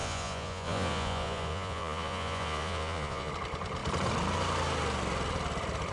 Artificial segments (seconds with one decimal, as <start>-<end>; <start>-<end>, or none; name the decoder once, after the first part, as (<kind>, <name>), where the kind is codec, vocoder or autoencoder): 0.0-3.3 (vocoder, Vocos)

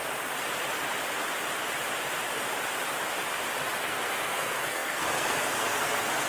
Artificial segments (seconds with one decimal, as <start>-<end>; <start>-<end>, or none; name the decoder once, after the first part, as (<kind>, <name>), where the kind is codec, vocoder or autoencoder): 3.8-6.3 (codec, SNAC)

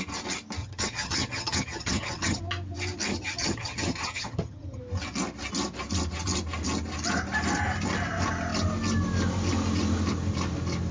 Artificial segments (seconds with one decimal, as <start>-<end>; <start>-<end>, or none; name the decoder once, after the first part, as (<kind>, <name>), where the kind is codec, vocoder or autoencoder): 0.6-2.4 (vocoder, HiFi-GAN); 3.1-4.8

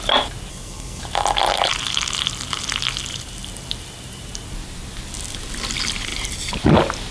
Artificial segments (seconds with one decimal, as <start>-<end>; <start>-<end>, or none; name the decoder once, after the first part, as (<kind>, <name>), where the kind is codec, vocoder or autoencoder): 0.5-1.0 (codec, SNAC)

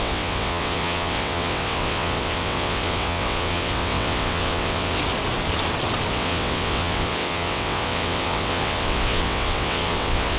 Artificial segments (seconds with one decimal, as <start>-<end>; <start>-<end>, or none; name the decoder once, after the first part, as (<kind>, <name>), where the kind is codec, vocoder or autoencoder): 0.0-5.0 (vocoder, WaveNeXt); 6.1-10.4

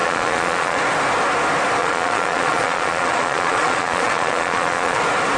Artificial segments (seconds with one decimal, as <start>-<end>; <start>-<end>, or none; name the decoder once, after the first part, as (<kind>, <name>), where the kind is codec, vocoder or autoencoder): 0.0-0.8 (vocoder, Vocos); 1.8-5.0

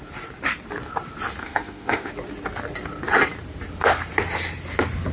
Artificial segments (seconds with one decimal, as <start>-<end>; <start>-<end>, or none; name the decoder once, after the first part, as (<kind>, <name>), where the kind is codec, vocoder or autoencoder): 1.4-2.1 (autoencoder, DAC-VAE)